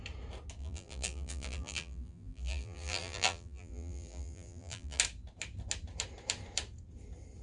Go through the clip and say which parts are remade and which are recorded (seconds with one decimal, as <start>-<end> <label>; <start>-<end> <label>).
0.0-0.6 recorded; 0.6-5.0 remade; 5.0-7.4 recorded